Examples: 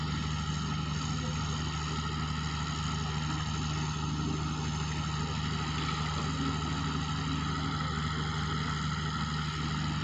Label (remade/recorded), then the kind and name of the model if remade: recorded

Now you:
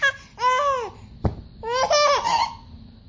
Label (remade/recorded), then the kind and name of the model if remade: recorded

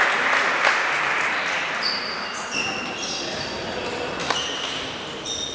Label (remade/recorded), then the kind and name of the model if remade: recorded